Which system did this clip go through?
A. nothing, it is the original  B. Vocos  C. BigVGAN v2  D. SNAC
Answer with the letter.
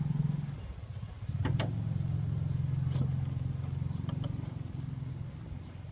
A